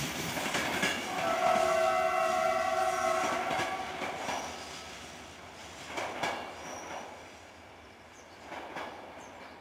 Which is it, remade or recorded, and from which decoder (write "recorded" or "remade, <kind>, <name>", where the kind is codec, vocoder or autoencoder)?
recorded